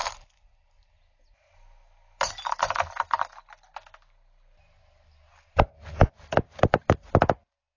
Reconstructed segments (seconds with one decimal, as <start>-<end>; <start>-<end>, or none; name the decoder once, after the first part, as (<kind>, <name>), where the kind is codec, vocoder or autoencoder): none